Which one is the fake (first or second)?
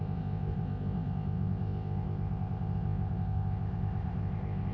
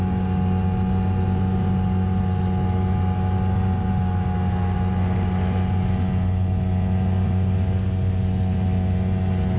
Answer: first